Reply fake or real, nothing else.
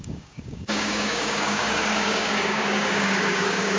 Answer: fake